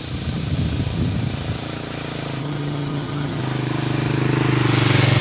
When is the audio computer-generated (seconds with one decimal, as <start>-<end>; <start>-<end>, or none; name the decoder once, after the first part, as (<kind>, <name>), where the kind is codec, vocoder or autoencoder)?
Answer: 2.4-3.4 (vocoder, HiFi-GAN)